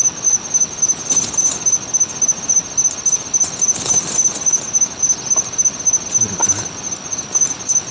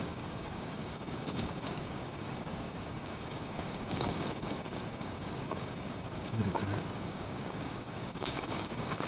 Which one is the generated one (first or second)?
second